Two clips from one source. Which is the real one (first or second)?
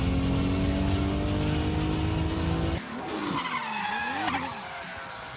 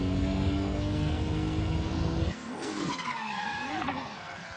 first